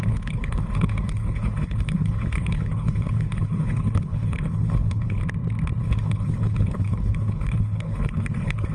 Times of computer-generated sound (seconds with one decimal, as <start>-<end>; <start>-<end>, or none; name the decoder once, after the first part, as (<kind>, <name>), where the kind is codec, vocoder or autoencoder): 0.0-5.2 (codec, HILCodec); 5.8-8.7